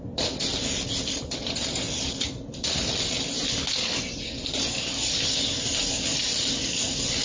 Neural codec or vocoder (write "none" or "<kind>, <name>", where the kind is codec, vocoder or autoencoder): none